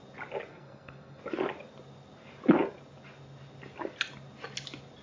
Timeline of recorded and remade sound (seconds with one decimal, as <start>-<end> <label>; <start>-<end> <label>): 0.0-0.5 recorded; 0.5-1.2 remade; 1.2-5.0 recorded